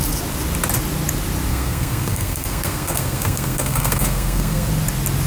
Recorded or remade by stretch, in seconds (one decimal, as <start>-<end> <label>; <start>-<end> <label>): 0.0-1.5 recorded; 1.5-4.7 remade; 4.7-5.3 recorded